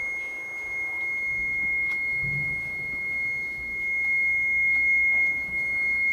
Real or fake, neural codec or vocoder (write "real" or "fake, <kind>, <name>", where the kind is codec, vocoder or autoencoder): real